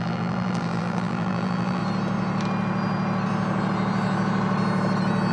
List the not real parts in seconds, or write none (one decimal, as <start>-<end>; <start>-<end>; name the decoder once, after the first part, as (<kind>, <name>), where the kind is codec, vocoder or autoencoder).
0.0-1.8 (vocoder, BigVGAN v2)